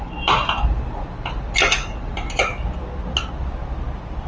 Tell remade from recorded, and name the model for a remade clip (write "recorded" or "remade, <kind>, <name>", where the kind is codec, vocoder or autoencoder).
recorded